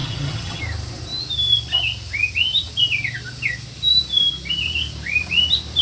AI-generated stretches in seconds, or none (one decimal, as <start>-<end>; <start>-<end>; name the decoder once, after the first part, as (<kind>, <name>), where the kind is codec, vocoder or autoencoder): 0.0-0.6 (vocoder, HiFi-GAN)